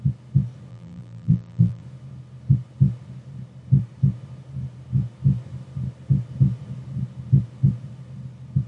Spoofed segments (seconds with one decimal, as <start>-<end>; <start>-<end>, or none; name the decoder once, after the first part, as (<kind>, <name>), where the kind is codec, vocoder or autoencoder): 0.7-1.8 (vocoder, BigVGAN v2)